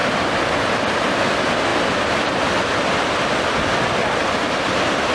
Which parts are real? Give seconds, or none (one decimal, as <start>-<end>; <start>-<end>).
1.0-1.7